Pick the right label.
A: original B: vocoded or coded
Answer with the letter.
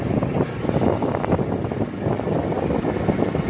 A